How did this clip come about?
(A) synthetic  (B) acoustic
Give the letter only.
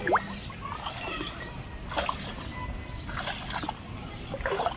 B